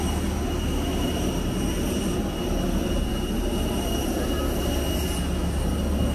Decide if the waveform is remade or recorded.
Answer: recorded